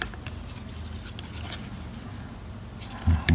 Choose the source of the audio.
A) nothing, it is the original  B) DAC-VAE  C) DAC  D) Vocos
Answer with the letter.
A